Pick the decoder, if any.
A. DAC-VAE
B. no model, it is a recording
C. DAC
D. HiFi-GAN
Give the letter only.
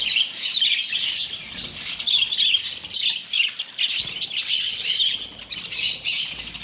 B